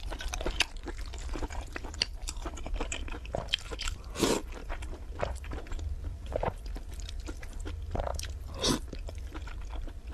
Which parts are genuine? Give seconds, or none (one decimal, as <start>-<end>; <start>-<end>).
0.0-0.8; 4.1-4.6; 6.6-10.1